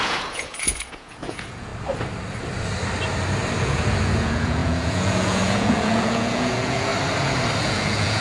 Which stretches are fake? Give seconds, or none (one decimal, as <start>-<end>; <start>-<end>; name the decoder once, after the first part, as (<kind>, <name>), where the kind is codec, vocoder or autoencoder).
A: 0.0-1.7 (vocoder, Vocos); 3.6-6.9; 7.6-8.2